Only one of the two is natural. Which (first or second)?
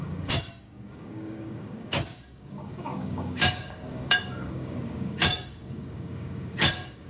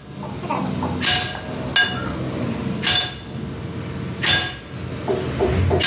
second